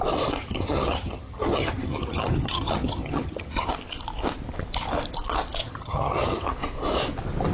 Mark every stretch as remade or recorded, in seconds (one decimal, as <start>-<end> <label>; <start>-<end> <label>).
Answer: 0.0-0.4 recorded; 0.4-3.7 remade; 3.7-5.6 recorded; 5.6-6.5 remade; 6.5-7.5 recorded